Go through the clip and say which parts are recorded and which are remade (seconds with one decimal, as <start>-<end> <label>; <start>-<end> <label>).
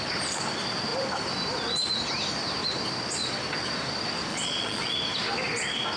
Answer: 0.0-4.3 recorded; 4.3-4.9 remade; 4.9-6.0 recorded